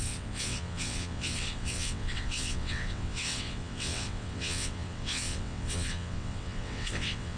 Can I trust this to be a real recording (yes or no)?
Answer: no